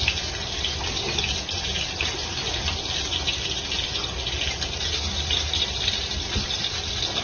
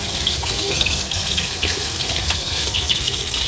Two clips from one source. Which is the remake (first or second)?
second